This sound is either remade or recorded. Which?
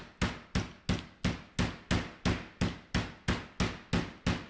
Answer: recorded